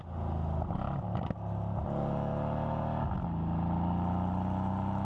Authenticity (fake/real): real